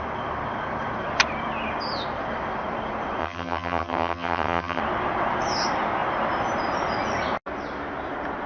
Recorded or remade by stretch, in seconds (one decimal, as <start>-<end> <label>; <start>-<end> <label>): 0.0-3.2 recorded; 3.2-4.8 remade; 4.8-8.5 recorded